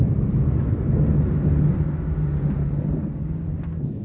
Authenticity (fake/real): real